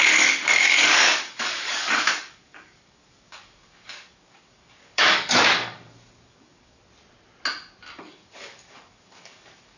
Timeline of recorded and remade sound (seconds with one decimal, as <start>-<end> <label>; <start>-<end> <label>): 0.0-6.8 remade; 6.8-8.0 recorded; 8.0-9.8 remade